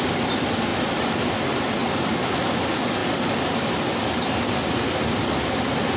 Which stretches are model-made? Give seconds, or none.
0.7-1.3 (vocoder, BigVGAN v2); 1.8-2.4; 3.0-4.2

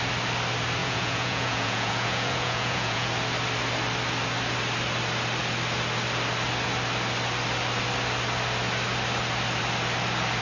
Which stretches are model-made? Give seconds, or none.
0.8-3.1 (vocoder, Vocos)

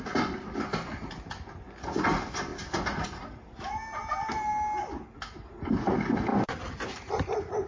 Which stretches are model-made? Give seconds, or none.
none

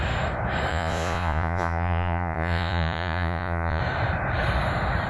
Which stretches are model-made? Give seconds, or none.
0.7-3.8 (vocoder, Vocos)

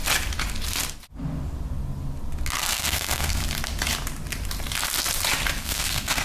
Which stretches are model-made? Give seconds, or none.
2.6-3.4 (codec, SNAC); 5.6-6.2

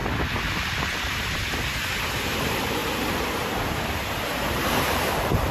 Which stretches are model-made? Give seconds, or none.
1.0-5.5 (vocoder, BigVGAN v2)